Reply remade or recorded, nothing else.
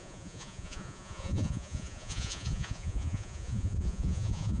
remade